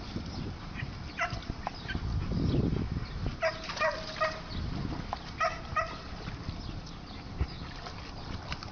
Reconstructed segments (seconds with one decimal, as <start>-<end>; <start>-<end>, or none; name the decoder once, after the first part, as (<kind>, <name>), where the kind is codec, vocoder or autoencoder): none